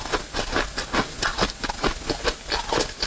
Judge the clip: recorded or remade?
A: recorded